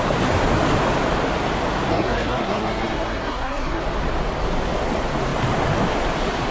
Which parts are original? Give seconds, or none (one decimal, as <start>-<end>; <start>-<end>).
0.0-1.9; 3.8-6.5